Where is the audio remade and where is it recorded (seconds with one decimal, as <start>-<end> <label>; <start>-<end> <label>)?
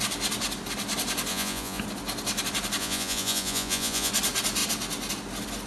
0.0-1.3 recorded; 1.3-1.8 remade; 1.8-2.8 recorded; 2.8-4.1 remade; 4.1-5.7 recorded